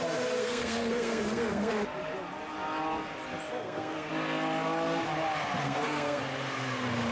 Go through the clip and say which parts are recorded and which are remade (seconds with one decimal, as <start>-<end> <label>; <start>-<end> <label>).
0.0-0.4 recorded; 0.4-1.7 remade; 1.7-3.5 recorded; 3.5-4.1 remade; 4.1-5.6 recorded; 5.6-6.2 remade; 6.2-7.1 recorded